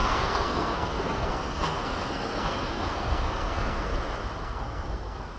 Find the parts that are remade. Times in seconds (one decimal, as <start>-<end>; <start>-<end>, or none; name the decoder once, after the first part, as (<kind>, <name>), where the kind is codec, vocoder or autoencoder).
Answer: 0.0-3.9 (codec, SNAC); 4.4-5.4